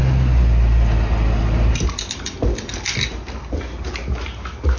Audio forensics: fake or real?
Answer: real